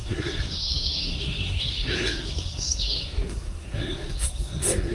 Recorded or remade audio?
remade